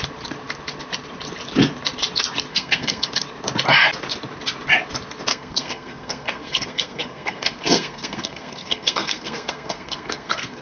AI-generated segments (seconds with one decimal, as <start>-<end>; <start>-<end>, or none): 2.5-3.1; 5.3-10.6